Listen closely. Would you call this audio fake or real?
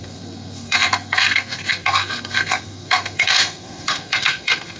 fake